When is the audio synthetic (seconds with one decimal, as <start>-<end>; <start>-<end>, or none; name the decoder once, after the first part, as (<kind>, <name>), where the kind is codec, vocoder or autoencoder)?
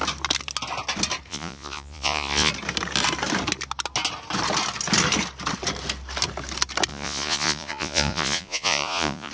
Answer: 1.3-2.5 (vocoder, Vocos); 6.9-9.3